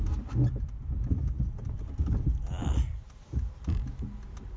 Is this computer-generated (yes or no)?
no